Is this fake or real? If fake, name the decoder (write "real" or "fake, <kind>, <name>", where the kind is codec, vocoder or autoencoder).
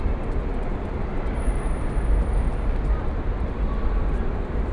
real